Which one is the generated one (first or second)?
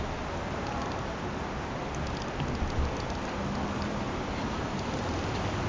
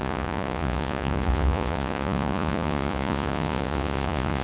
second